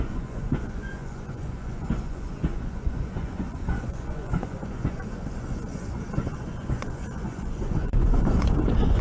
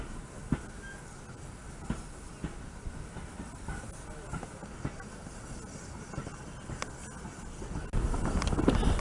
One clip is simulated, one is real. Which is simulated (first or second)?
first